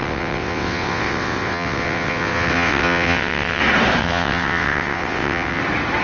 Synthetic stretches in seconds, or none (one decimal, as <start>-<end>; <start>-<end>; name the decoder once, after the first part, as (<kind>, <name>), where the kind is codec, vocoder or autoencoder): 0.0-3.6 (vocoder, WaveNeXt); 4.0-5.6